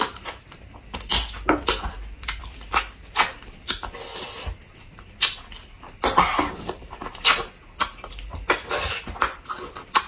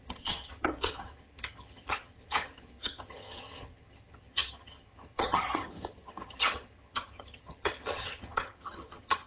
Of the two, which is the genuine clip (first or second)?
first